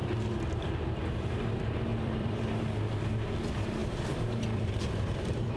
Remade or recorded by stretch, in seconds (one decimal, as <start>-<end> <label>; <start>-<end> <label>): 0.0-1.9 recorded; 1.9-2.6 remade; 2.6-3.8 recorded; 3.8-5.6 remade